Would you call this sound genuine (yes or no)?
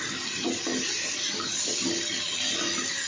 yes